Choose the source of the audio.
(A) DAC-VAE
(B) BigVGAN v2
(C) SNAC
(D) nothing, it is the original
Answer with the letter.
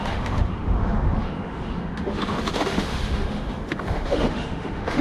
A